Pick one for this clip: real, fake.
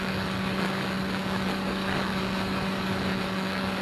fake